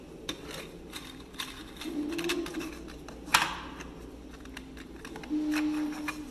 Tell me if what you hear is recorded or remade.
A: recorded